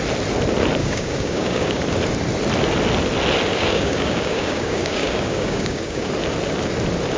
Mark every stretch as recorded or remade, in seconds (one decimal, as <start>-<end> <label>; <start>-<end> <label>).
0.0-0.8 recorded; 0.8-1.8 remade; 1.8-3.5 recorded; 3.5-6.1 remade; 6.1-7.2 recorded